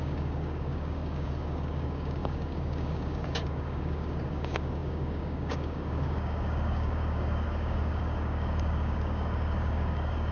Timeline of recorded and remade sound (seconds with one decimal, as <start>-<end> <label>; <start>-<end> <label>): 0.0-10.3 remade